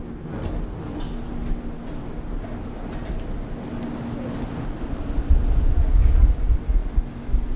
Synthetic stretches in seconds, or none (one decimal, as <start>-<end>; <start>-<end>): none